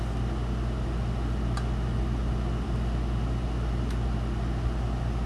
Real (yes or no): yes